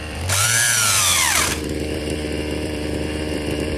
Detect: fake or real fake